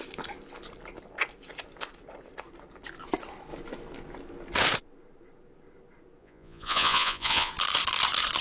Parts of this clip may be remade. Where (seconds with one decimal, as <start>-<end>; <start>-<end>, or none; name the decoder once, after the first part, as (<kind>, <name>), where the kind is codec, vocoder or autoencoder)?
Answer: 6.2-7.5 (vocoder, Vocos)